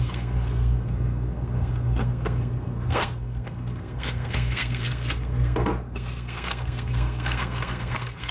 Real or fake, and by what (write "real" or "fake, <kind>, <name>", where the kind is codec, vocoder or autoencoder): fake, codec, SNAC